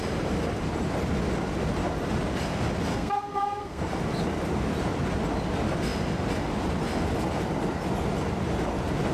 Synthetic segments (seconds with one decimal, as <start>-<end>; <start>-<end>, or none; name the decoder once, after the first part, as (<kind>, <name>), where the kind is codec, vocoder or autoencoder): 2.9-3.8 (codec, SNAC)